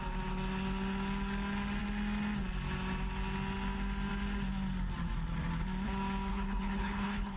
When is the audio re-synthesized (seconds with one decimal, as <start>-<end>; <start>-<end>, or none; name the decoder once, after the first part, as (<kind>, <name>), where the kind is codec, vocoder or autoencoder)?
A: 6.3-7.4 (codec, HILCodec)